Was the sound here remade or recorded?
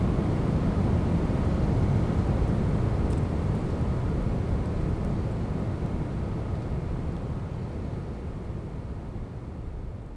recorded